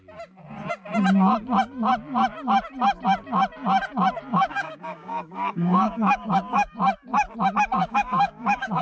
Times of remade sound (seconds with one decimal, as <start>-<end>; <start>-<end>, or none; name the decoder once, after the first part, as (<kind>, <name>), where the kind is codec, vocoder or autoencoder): 4.3-6.8 (codec, DAC); 7.8-8.8